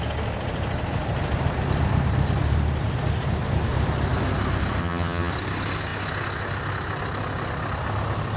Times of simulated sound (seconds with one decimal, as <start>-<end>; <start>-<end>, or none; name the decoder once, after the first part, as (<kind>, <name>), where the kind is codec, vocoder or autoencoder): 4.8-5.3 (vocoder, HiFi-GAN)